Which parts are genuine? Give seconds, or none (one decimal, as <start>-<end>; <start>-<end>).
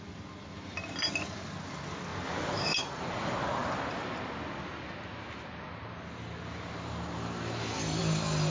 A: 0.0-2.1; 3.0-8.5